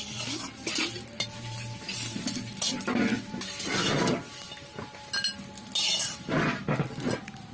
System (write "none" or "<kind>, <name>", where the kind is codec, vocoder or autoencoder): none